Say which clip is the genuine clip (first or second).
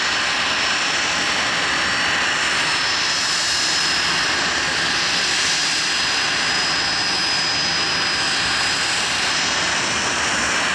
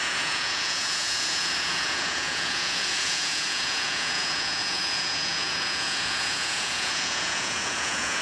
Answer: first